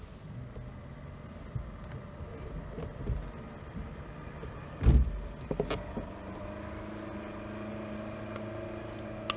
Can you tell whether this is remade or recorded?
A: recorded